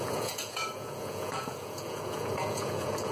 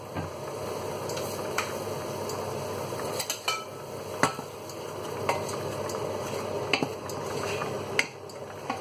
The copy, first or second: first